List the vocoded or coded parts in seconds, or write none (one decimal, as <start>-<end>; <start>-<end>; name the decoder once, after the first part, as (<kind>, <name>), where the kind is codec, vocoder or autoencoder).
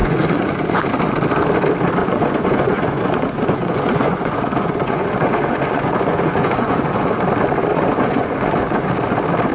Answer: 0.0-0.8 (vocoder, Vocos); 2.0-7.1; 7.7-8.9